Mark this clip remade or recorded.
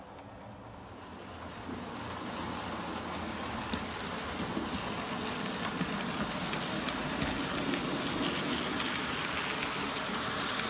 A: recorded